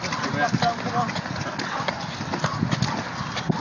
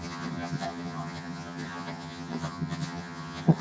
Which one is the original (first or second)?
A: first